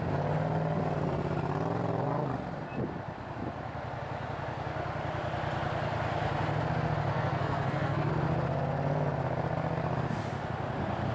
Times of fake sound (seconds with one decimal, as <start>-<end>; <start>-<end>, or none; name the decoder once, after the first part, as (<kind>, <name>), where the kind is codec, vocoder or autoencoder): 7.1-8.1 (codec, SNAC)